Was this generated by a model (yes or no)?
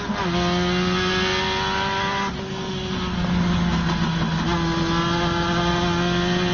no